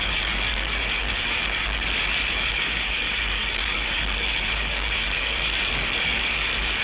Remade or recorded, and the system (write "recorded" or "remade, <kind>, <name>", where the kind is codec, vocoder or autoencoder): remade, codec, DAC